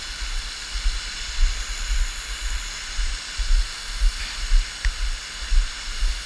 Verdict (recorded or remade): recorded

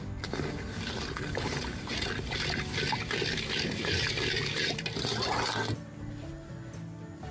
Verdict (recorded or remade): recorded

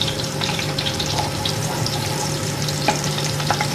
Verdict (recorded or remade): remade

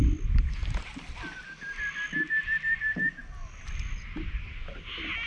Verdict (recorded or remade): recorded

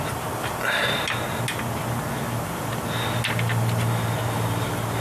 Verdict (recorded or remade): recorded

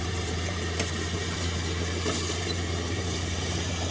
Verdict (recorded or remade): remade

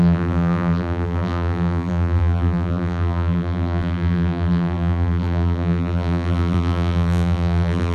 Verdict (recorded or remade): remade